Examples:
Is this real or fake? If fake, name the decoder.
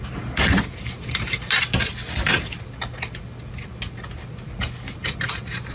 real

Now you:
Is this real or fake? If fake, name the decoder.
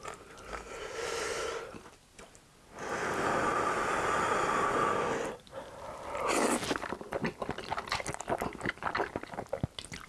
real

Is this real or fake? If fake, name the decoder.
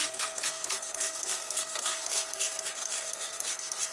fake, codec, SNAC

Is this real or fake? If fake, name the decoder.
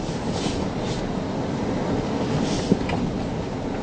real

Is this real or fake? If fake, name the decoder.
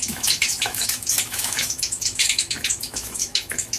fake, autoencoder, DAC-VAE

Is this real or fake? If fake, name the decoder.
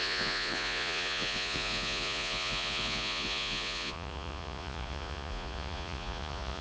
fake, vocoder, Vocos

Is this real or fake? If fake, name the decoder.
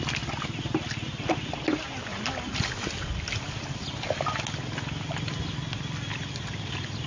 real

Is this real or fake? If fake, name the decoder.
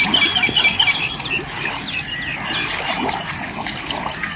real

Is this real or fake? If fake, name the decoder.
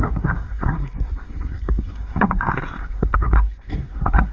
fake, codec, SNAC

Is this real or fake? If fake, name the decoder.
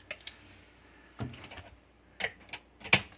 real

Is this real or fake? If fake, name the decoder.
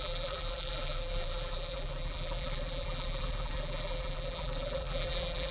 fake, vocoder, BigVGAN v2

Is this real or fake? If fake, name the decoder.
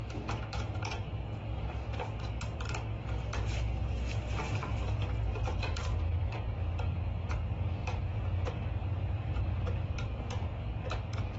fake, codec, DAC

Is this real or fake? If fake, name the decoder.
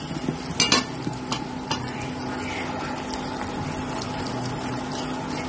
real